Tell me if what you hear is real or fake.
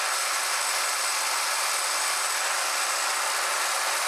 real